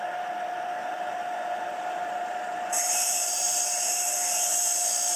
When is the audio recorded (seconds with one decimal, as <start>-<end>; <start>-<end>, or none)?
0.0-0.8; 3.6-5.2